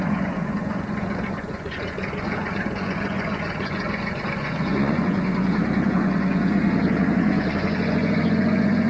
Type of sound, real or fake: fake